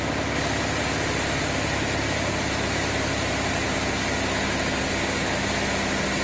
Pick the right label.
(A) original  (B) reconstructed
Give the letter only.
A